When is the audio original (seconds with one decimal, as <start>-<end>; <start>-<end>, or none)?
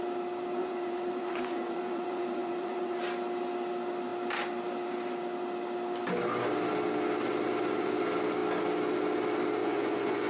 0.0-0.6; 3.0-9.6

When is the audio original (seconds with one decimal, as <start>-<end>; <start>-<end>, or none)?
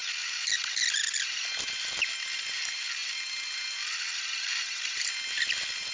0.0-5.9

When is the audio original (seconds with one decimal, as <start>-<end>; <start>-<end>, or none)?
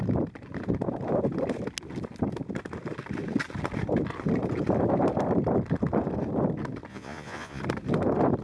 0.0-6.9; 7.6-8.4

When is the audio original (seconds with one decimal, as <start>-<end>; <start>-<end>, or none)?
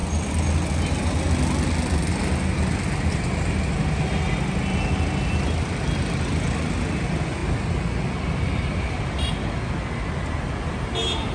0.0-11.3